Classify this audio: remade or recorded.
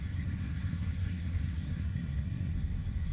remade